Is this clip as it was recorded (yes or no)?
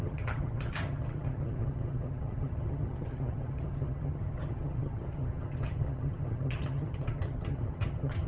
no